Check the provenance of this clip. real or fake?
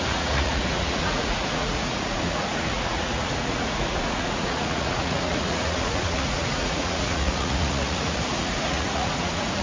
fake